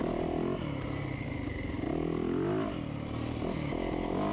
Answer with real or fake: real